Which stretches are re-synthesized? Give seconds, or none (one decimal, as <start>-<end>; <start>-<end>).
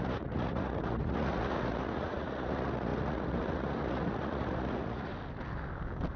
0.0-5.1